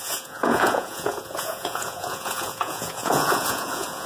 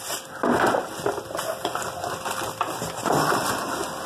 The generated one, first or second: first